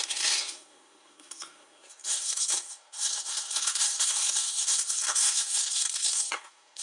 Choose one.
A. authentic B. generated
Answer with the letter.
B